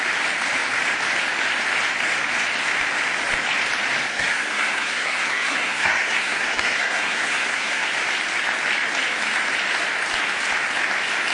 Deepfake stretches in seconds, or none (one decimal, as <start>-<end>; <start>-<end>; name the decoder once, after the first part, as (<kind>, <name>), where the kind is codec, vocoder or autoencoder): 4.1-7.9 (codec, SNAC)